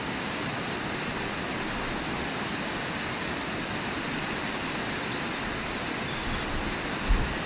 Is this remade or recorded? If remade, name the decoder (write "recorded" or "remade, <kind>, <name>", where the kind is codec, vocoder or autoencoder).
recorded